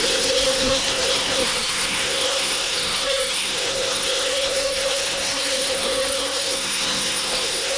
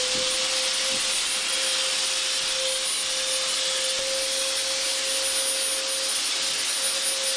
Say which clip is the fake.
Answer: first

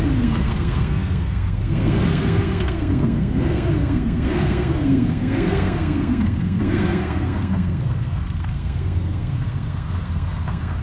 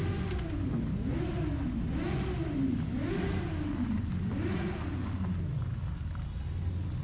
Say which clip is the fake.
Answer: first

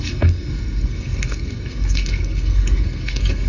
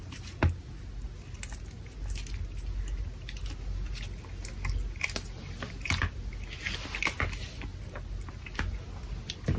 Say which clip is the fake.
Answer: first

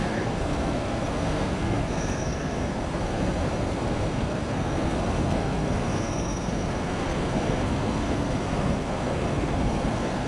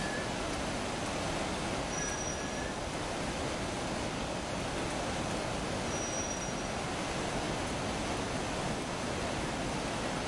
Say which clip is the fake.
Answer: first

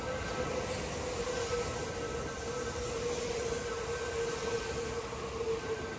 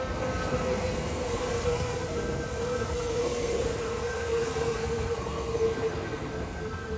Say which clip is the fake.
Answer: second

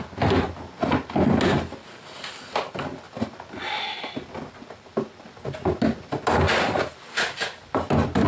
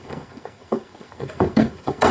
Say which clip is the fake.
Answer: second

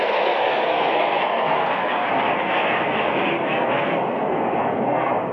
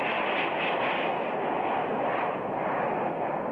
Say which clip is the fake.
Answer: first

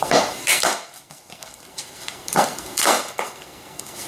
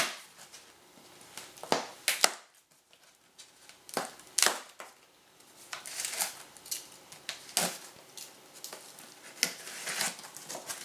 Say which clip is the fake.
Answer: first